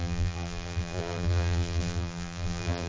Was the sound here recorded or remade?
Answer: remade